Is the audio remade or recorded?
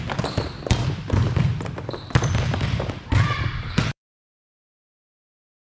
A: remade